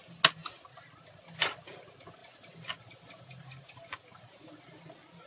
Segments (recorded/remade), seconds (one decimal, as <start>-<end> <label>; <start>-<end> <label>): 0.0-5.3 recorded